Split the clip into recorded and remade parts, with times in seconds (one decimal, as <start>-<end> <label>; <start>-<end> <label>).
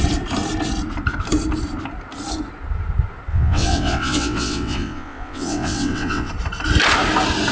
0.0-3.3 recorded; 3.3-6.3 remade; 6.3-7.5 recorded